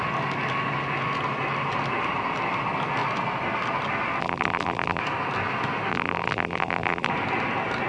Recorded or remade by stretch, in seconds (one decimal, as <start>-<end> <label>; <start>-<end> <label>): 0.0-4.2 recorded; 4.2-5.0 remade; 5.0-5.9 recorded; 5.9-7.1 remade; 7.1-7.9 recorded